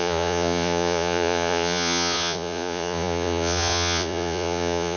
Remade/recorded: remade